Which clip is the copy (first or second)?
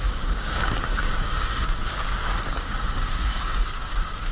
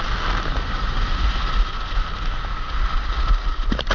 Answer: first